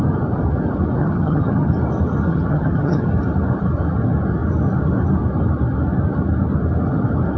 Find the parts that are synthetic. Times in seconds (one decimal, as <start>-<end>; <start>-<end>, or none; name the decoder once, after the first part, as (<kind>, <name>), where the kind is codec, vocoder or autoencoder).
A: 1.0-1.7 (vocoder, HiFi-GAN); 2.3-3.1